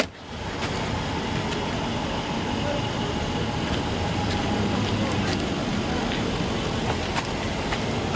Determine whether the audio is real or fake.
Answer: real